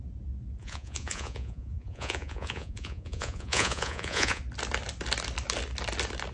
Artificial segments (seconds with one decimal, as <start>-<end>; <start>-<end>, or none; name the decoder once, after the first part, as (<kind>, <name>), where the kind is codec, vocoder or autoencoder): 0.6-4.4 (vocoder, Vocos)